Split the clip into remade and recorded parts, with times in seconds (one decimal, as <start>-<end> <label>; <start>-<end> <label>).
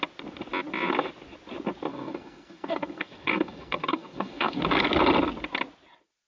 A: 0.0-1.9 recorded; 1.9-4.6 remade; 4.6-6.3 recorded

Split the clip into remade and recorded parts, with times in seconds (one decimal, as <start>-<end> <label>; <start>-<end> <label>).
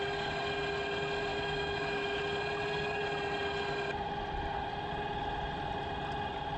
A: 0.0-1.3 recorded; 1.3-2.2 remade; 2.2-6.6 recorded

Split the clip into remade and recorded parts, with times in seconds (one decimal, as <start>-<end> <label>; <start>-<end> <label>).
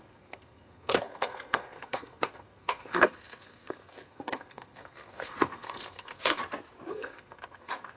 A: 0.0-6.4 remade; 6.4-6.9 recorded; 6.9-8.0 remade